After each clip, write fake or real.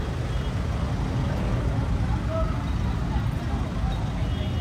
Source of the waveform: real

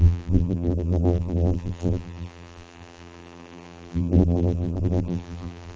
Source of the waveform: fake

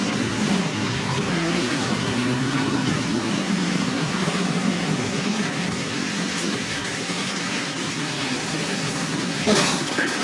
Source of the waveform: fake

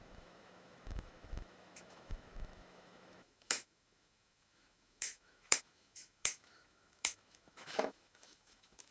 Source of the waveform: fake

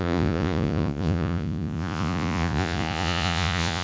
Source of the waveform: fake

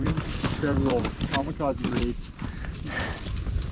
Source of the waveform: fake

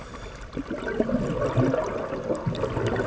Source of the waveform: real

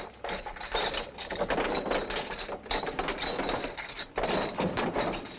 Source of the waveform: real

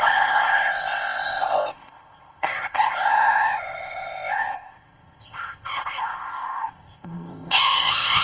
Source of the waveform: fake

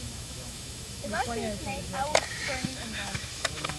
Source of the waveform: fake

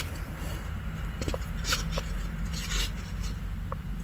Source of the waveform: real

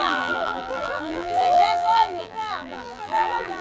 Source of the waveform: fake